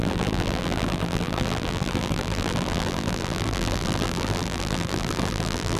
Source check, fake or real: fake